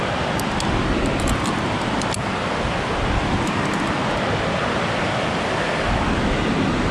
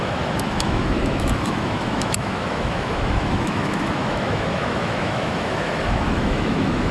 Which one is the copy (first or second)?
second